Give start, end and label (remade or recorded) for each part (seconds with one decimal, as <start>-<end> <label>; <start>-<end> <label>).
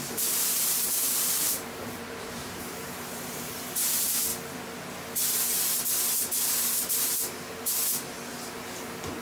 0.0-4.3 remade; 4.3-8.5 recorded; 8.5-9.2 remade